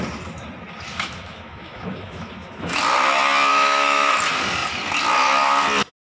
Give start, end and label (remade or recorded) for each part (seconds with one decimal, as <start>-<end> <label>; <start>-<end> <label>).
0.0-0.9 recorded; 0.9-2.8 remade; 2.8-3.5 recorded; 3.5-4.1 remade; 4.1-6.0 recorded